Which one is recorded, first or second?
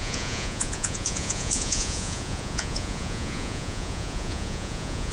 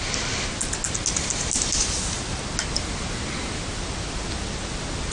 second